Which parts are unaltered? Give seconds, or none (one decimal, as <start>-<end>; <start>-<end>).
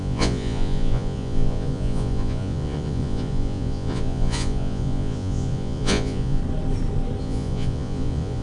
6.4-7.2